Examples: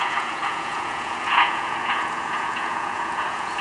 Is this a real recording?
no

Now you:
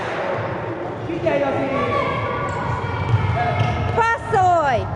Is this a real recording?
yes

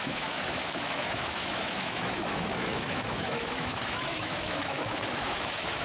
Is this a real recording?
no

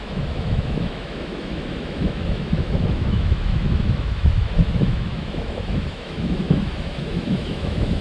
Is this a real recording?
no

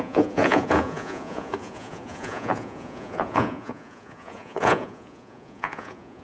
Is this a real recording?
no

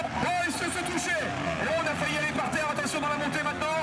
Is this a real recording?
yes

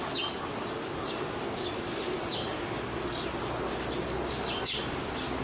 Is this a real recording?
yes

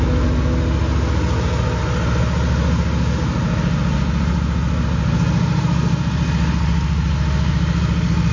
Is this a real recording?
yes